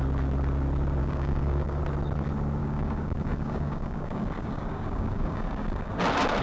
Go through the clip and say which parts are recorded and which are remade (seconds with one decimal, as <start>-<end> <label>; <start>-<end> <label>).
0.0-1.0 recorded; 1.0-1.8 remade; 1.8-2.6 recorded; 2.6-5.9 remade; 5.9-6.4 recorded